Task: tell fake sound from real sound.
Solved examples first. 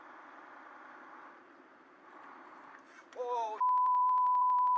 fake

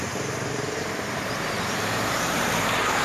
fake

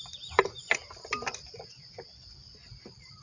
fake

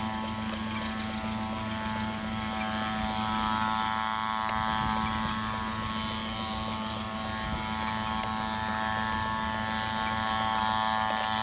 real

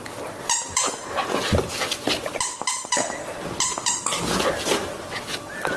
real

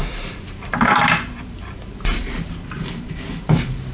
fake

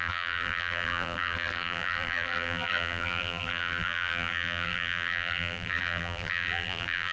fake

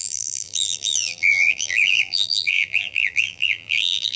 fake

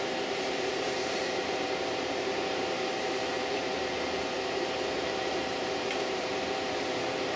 fake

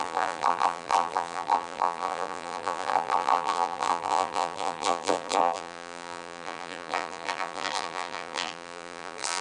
fake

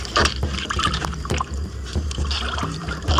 fake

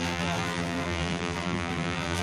fake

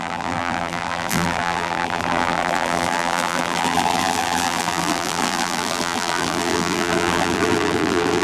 fake